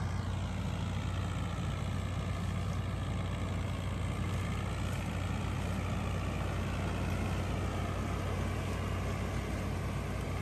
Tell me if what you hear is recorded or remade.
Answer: recorded